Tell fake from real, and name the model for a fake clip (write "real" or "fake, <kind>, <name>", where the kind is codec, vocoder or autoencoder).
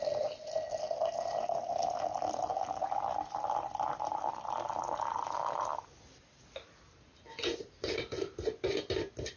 real